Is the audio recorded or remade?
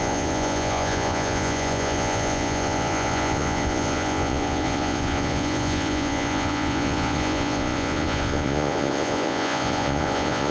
remade